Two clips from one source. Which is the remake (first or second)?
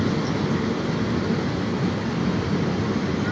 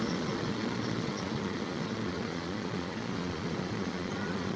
second